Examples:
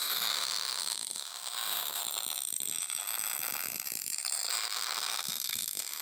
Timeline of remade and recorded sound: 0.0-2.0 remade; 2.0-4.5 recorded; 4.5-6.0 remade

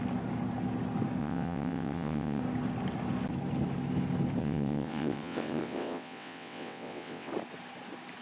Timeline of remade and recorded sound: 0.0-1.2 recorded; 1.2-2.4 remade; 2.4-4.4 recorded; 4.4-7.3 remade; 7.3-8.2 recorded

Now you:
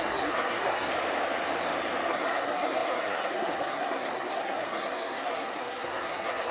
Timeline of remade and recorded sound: 0.0-0.9 remade; 0.9-2.1 recorded; 2.1-6.5 remade